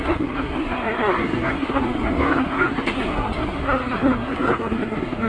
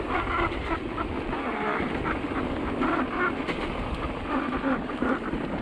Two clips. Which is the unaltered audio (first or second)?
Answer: second